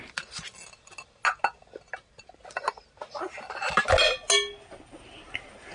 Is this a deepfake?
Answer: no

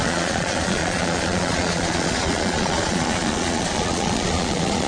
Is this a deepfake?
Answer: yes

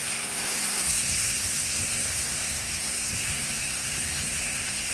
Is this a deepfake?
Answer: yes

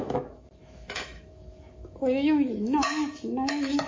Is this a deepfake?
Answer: yes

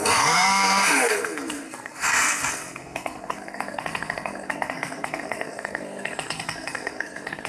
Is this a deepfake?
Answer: yes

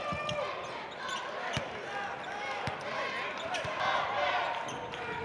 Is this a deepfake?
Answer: no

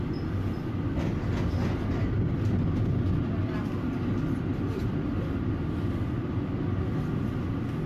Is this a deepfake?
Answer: no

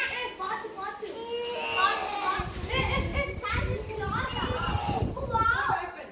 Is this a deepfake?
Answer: no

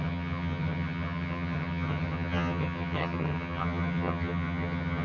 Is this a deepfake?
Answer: yes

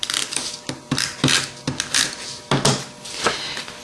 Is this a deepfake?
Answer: no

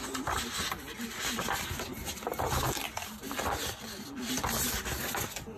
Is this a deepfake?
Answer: no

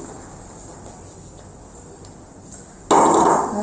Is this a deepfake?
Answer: no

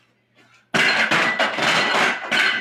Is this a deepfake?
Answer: no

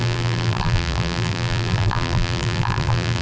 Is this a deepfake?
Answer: yes